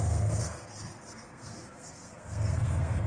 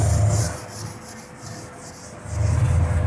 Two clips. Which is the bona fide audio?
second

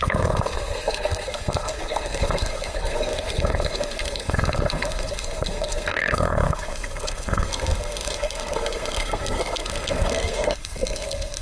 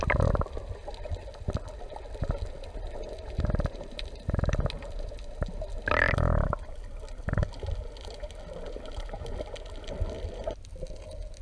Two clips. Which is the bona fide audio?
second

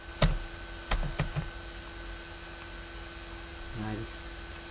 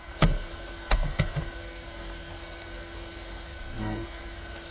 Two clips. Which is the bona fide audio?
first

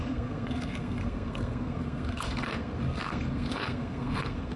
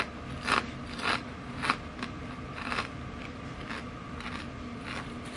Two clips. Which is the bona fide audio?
second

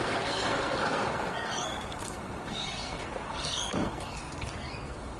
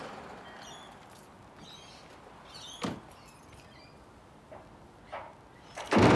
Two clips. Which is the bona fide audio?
second